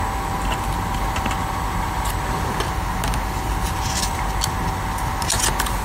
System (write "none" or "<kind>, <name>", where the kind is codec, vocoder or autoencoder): none